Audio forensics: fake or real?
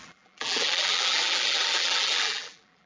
fake